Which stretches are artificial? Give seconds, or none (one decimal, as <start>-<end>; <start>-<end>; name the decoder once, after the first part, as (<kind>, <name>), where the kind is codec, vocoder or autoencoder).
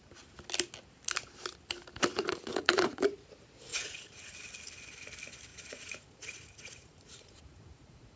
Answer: 2.1-3.0 (vocoder, Vocos); 3.7-4.3; 5.5-8.2